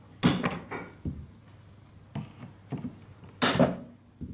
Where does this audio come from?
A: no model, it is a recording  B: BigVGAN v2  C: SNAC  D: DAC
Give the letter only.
A